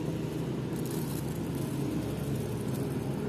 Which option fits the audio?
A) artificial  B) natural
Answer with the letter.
B